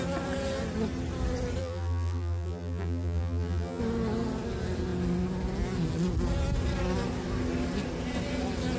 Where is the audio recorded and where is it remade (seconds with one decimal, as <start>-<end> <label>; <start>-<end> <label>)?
0.0-1.6 recorded; 1.6-3.8 remade; 3.8-8.8 recorded